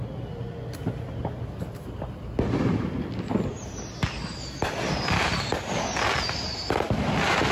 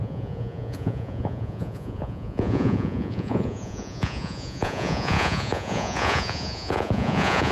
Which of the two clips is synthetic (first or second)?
second